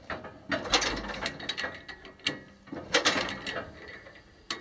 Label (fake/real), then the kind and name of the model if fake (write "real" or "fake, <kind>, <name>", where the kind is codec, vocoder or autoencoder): real